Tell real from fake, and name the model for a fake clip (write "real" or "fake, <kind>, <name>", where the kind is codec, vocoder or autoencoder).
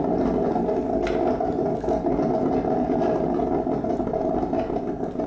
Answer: real